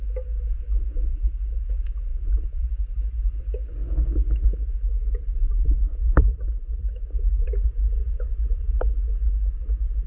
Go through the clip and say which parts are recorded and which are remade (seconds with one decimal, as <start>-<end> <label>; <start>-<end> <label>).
0.0-2.1 recorded; 2.1-3.4 remade; 3.4-6.0 recorded; 6.0-8.8 remade; 8.8-10.1 recorded